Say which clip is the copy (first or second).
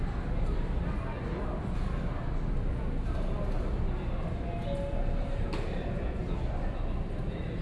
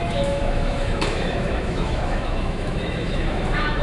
second